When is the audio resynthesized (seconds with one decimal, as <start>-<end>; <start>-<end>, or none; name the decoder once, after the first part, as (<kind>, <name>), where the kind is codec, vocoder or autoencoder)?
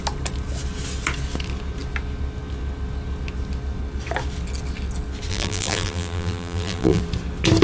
5.3-7.0 (vocoder, BigVGAN v2)